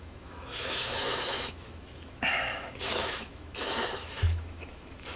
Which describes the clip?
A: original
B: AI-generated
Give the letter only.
B